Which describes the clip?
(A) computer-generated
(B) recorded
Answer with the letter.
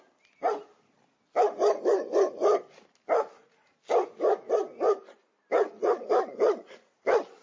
B